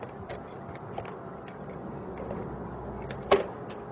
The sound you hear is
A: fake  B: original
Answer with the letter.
B